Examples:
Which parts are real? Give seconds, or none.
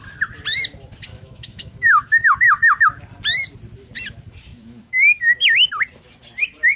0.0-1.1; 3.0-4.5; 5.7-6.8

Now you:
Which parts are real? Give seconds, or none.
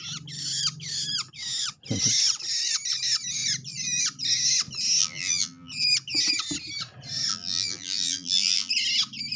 0.0-5.0; 5.7-7.3; 8.7-9.4